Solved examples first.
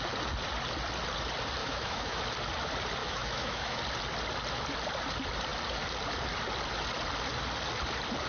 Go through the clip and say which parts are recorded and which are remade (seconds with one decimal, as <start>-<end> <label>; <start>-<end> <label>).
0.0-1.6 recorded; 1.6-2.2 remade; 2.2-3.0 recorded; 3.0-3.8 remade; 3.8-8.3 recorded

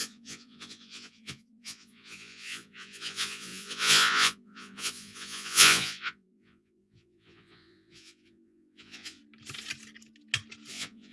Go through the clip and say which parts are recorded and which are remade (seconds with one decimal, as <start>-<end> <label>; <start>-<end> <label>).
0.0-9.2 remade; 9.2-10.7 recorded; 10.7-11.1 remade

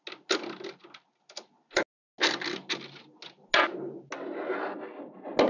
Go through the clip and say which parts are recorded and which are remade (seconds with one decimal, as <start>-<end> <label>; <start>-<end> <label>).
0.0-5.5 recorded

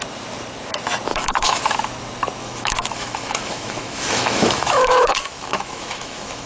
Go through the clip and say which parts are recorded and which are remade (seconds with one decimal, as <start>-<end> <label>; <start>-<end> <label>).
0.0-1.1 recorded; 1.1-1.6 remade; 1.6-2.4 recorded; 2.4-6.5 remade